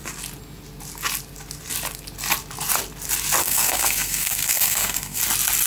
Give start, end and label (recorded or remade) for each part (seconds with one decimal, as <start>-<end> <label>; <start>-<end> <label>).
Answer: 0.0-3.4 recorded; 3.4-5.2 remade; 5.2-5.7 recorded